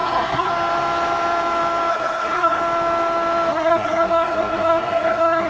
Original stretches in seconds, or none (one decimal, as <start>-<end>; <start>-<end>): 0.5-1.9; 2.6-3.5

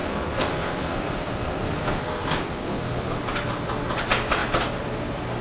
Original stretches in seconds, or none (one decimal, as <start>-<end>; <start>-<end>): 3.2-5.4

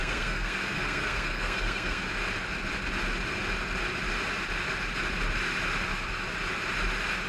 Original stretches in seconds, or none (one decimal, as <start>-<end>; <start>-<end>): 2.0-7.3

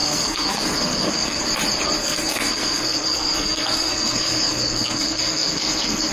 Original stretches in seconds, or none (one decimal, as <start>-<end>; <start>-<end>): 1.4-2.0

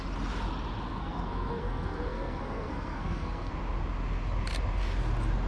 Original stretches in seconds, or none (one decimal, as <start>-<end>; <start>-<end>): 0.0-0.9; 3.5-5.5

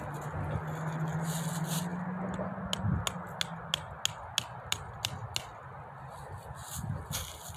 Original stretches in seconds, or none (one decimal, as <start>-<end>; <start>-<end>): 0.0-7.6